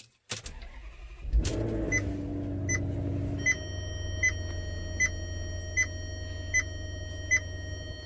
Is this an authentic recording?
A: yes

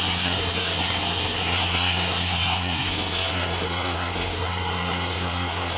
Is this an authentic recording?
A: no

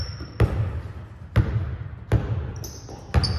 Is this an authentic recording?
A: yes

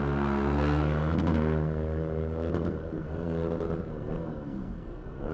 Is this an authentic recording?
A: no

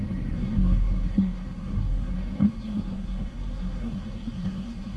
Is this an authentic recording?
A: no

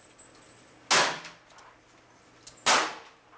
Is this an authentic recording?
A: yes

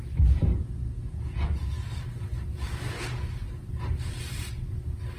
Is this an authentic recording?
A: yes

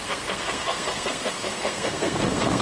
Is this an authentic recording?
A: no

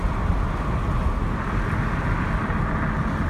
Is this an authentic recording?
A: yes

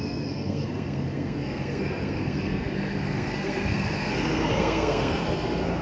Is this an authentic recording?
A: no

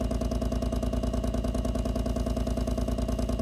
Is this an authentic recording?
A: yes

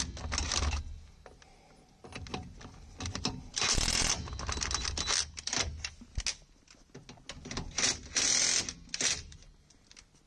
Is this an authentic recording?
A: yes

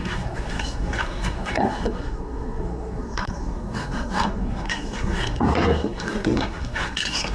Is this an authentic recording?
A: no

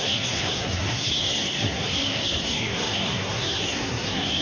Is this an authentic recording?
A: no